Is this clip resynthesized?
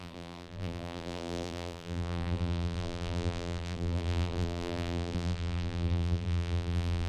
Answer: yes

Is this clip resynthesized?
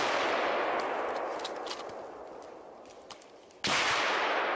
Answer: no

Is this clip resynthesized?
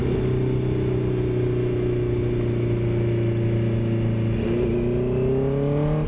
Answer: no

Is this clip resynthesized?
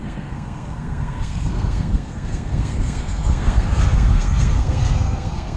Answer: yes